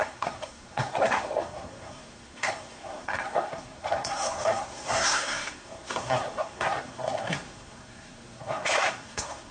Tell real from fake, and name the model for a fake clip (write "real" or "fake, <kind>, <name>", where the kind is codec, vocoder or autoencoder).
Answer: fake, codec, SNAC